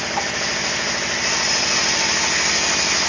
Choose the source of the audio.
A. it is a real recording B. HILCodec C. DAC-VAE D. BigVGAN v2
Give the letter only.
A